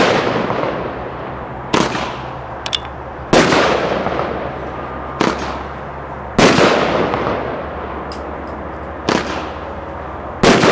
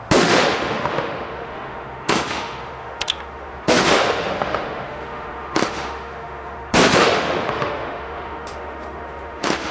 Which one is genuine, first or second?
first